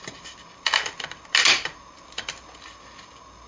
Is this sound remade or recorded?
recorded